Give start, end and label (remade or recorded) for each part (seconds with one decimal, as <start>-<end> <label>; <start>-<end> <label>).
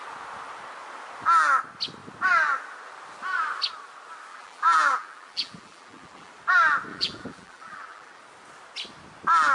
0.0-4.3 recorded; 4.3-6.3 remade; 6.3-6.9 recorded; 6.9-8.2 remade; 8.2-9.5 recorded